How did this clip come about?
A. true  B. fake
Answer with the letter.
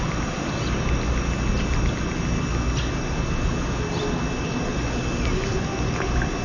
A